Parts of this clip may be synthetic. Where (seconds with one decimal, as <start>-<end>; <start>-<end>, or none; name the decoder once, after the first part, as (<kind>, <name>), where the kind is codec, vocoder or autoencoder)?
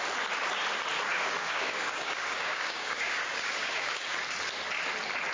1.1-4.0 (codec, DAC)